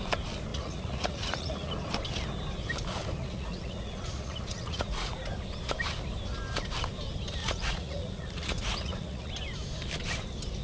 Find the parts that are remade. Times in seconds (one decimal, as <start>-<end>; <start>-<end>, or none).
0.5-1.7; 3.2-5.1; 7.4-9.3